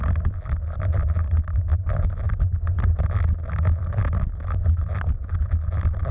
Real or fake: real